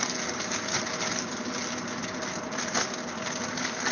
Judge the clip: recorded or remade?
recorded